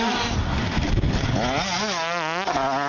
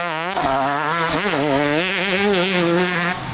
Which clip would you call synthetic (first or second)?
second